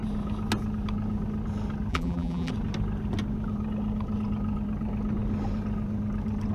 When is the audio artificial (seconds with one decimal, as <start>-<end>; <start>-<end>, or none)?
1.9-2.5